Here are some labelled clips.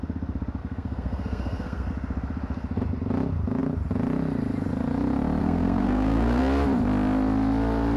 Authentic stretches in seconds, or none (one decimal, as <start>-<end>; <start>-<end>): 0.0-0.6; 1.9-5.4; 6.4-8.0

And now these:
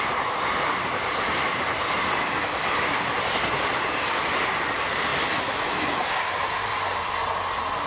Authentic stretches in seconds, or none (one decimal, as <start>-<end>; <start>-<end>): 0.0-7.9

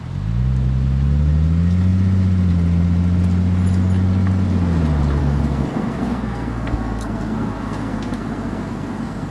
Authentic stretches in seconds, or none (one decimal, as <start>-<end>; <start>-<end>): 0.0-5.2

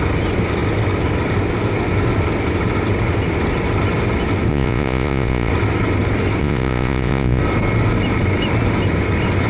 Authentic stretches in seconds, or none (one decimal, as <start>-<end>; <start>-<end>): 0.0-4.5; 5.5-6.4; 7.4-9.5